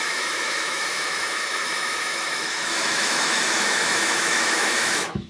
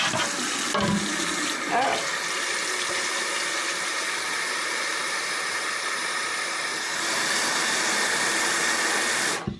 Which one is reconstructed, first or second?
first